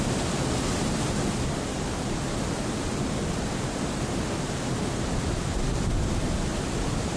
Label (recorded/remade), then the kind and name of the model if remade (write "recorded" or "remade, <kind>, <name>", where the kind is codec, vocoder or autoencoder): recorded